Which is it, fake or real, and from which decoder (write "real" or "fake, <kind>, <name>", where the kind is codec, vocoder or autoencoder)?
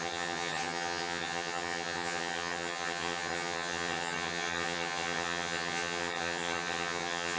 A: fake, vocoder, HiFi-GAN